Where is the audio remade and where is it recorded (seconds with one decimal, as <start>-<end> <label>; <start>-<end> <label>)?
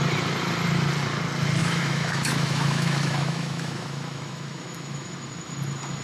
0.0-1.6 recorded; 1.6-5.1 remade; 5.1-6.0 recorded